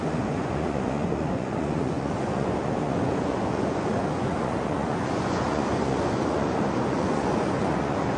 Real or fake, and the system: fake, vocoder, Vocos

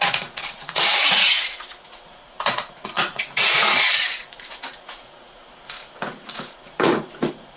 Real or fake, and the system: fake, vocoder, Vocos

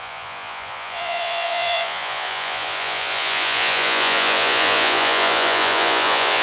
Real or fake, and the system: fake, vocoder, Vocos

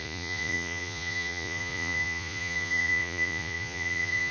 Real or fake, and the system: fake, vocoder, Vocos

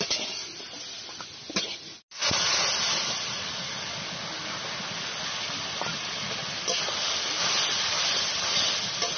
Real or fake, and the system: real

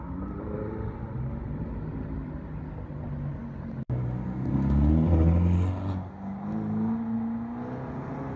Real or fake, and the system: real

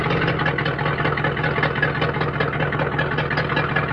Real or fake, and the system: real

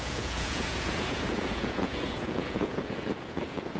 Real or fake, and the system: fake, vocoder, Vocos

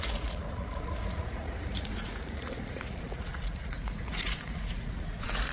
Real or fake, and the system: fake, vocoder, Vocos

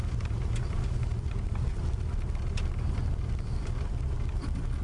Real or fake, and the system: real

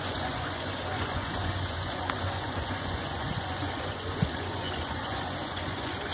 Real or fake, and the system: fake, vocoder, Vocos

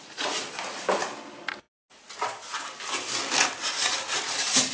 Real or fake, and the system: real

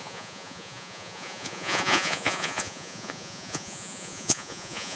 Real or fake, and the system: fake, vocoder, Vocos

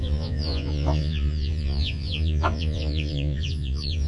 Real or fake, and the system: fake, vocoder, Vocos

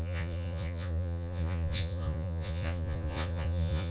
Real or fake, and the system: fake, vocoder, Vocos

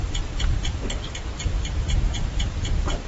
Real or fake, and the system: real